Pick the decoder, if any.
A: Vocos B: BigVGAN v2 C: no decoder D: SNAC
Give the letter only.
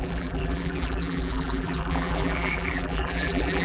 B